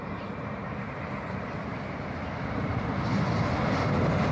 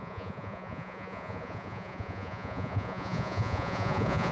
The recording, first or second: first